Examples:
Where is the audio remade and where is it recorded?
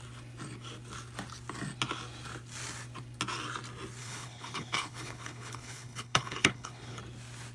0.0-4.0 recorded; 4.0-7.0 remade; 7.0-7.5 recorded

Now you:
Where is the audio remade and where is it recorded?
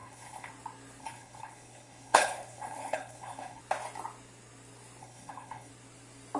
0.0-0.5 remade; 0.5-1.0 recorded; 1.0-3.6 remade; 3.6-5.0 recorded; 5.0-5.7 remade; 5.7-6.4 recorded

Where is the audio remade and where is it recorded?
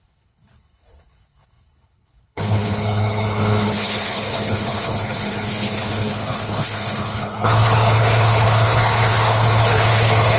0.0-10.4 remade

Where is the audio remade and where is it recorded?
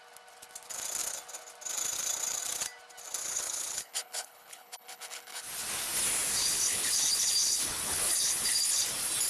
0.0-3.2 recorded; 3.2-5.4 remade; 5.4-6.4 recorded; 6.4-8.8 remade; 8.8-9.3 recorded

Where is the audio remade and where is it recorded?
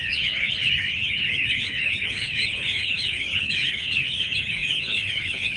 0.0-5.6 remade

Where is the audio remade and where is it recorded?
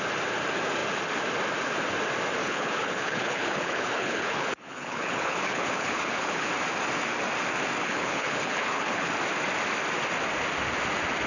0.0-2.4 recorded; 2.4-6.5 remade; 6.5-7.8 recorded; 7.8-9.1 remade; 9.1-11.3 recorded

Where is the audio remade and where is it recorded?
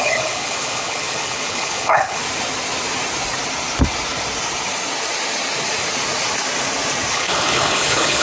0.0-2.2 remade; 2.2-7.1 recorded; 7.1-8.2 remade